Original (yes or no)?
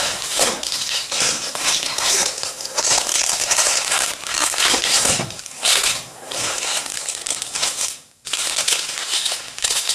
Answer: no